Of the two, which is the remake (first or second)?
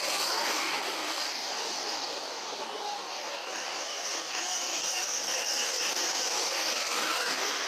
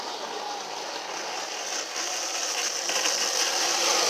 first